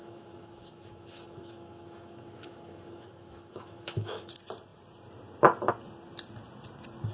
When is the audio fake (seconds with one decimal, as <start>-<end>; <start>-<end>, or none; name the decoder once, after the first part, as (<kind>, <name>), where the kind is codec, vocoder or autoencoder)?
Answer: 0.0-4.3 (autoencoder, DAC-VAE)